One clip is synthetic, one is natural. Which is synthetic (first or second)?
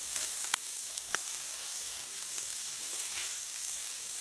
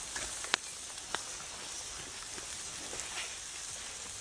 first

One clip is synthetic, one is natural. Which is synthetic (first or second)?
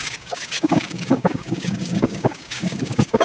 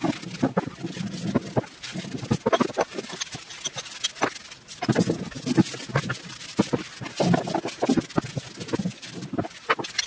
first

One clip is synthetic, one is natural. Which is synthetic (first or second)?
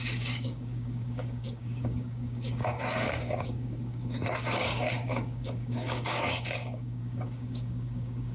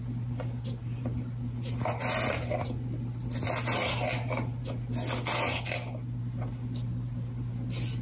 first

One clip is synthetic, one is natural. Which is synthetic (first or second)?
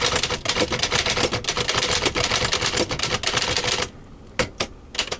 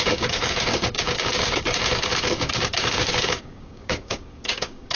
second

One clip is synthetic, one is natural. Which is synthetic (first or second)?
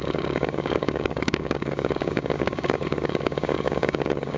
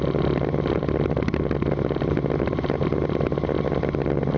first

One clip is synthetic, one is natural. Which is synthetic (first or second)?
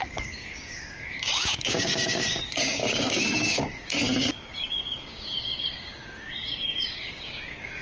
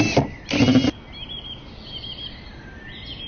first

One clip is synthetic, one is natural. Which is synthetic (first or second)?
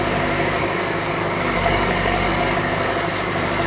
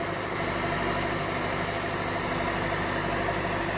first